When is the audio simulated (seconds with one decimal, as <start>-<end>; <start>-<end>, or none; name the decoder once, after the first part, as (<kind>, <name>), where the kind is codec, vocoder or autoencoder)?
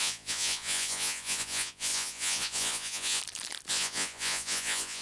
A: 0.0-3.2 (vocoder, Vocos); 3.7-5.0